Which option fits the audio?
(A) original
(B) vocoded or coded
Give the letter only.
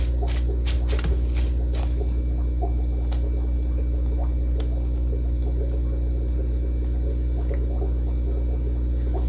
A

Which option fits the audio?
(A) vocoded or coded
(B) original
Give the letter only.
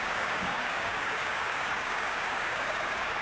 A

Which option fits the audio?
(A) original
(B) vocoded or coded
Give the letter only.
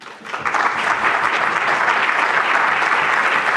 A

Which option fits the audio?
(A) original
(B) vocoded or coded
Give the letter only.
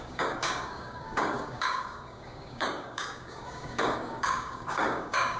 B